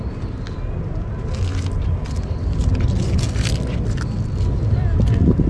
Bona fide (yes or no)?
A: yes